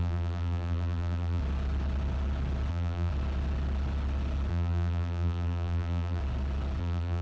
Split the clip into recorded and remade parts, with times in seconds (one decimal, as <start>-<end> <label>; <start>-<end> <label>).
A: 0.0-1.4 remade; 1.4-2.7 recorded; 2.7-3.1 remade; 3.1-4.5 recorded; 4.5-6.2 remade; 6.2-6.8 recorded; 6.8-7.2 remade